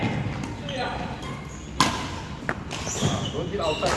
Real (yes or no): yes